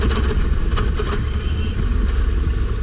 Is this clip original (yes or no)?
yes